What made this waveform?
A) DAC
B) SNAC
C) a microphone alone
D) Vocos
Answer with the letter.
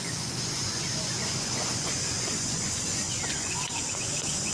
D